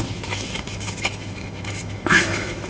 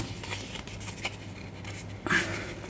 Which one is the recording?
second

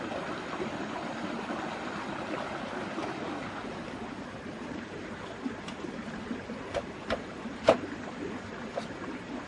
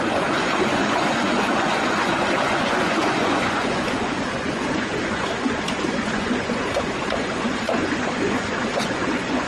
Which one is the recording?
first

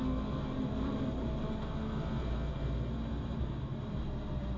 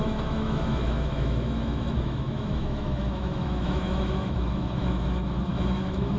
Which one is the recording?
first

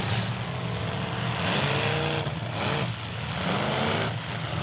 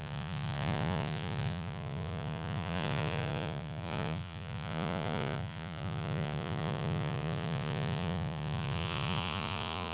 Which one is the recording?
first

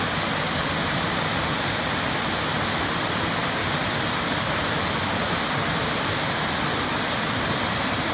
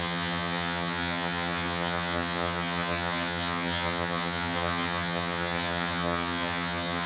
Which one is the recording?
first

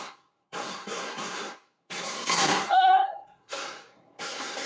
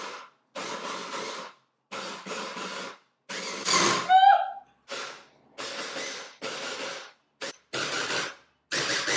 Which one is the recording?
second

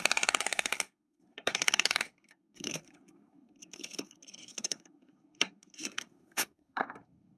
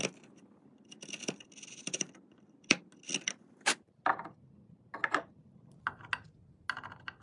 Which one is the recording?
second